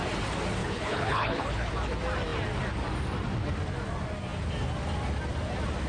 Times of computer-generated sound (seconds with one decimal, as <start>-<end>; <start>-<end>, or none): 0.6-1.7